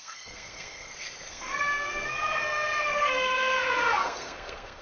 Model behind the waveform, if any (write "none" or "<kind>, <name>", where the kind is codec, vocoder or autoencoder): codec, SNAC